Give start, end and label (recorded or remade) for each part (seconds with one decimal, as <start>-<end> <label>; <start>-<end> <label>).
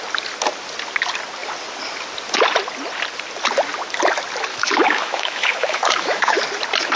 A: 0.0-4.5 recorded; 4.5-6.4 remade; 6.4-7.0 recorded